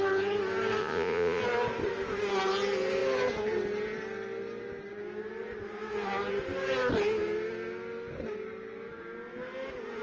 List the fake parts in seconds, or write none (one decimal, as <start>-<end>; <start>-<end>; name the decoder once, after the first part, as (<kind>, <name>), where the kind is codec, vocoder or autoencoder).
0.8-1.4 (vocoder, Vocos)